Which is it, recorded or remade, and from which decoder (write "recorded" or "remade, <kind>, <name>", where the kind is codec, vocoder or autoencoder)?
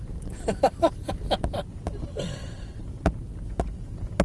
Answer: recorded